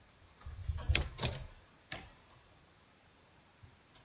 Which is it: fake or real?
fake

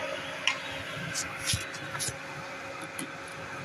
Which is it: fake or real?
real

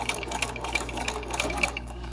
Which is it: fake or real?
fake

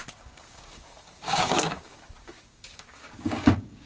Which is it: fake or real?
fake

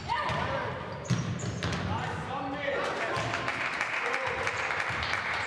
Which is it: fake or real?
real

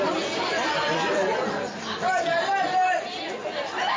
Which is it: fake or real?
real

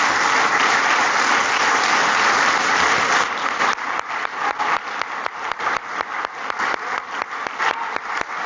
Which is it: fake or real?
real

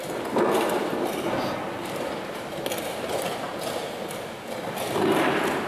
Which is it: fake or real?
real